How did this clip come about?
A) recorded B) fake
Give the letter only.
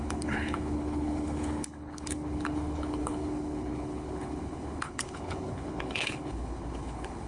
B